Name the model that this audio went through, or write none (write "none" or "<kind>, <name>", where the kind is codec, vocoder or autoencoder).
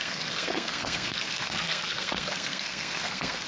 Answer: codec, SNAC